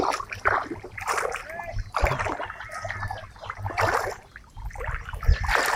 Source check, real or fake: real